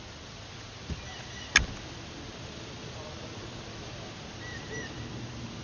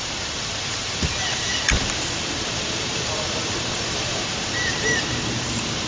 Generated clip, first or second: second